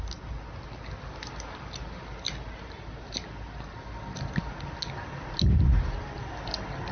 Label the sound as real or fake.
real